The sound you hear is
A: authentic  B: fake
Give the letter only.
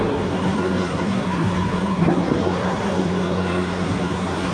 B